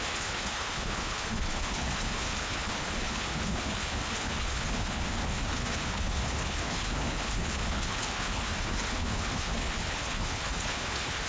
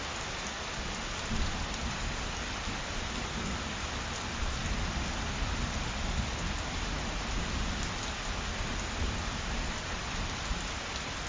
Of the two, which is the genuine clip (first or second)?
second